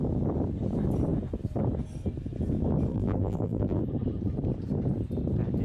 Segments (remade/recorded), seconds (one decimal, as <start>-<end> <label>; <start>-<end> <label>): 0.0-2.9 recorded; 2.9-3.8 remade; 3.8-5.6 recorded